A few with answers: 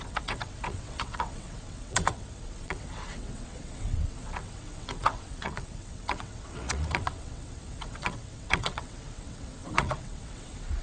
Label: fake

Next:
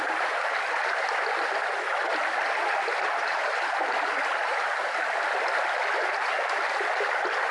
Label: real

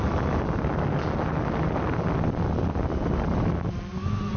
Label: real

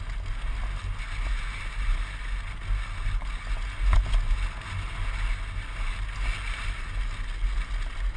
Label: real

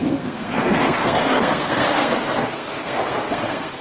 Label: fake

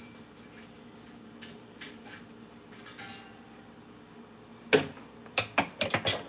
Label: real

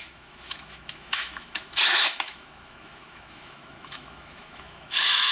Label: fake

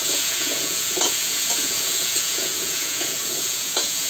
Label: fake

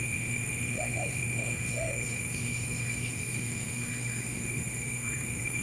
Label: fake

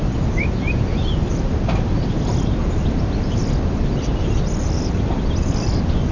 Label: real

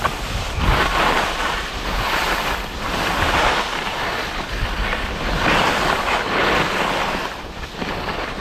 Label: real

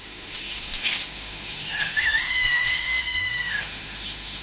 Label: fake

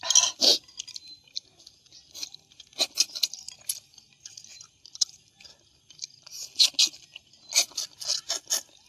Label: real